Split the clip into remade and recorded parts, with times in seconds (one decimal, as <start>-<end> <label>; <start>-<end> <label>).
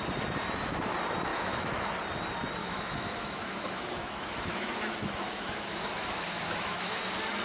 0.0-1.3 recorded; 1.3-1.9 remade; 1.9-2.6 recorded; 2.6-7.0 remade; 7.0-7.4 recorded